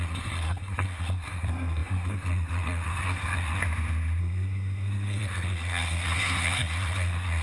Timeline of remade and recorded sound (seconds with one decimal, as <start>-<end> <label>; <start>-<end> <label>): 0.0-3.6 remade; 3.6-4.2 recorded; 4.2-7.4 remade